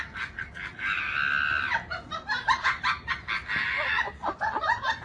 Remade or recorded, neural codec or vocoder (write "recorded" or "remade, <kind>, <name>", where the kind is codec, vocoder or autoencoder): recorded